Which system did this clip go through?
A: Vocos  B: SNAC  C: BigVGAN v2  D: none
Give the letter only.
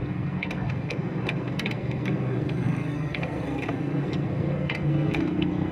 B